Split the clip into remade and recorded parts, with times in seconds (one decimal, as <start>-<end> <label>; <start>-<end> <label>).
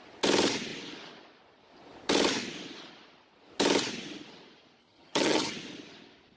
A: 0.0-4.8 recorded; 4.8-5.5 remade; 5.5-6.4 recorded